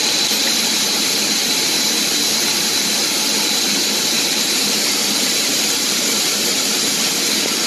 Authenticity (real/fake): fake